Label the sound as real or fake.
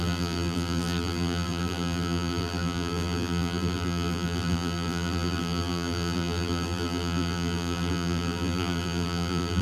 fake